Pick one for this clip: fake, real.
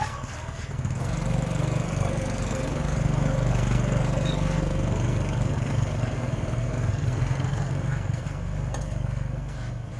fake